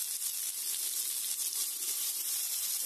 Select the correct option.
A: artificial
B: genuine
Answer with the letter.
B